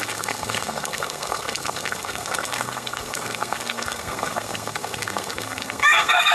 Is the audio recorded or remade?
remade